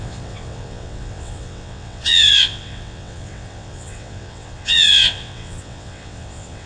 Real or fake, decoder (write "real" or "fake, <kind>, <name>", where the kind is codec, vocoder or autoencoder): fake, vocoder, WaveNeXt